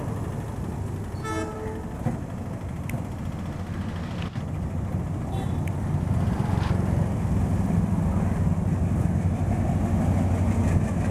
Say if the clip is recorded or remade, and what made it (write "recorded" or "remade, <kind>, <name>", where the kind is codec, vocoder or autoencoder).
recorded